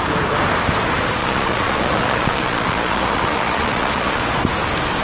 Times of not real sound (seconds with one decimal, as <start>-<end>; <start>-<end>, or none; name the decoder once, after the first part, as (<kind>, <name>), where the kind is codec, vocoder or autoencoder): 1.2-4.2 (vocoder, Vocos)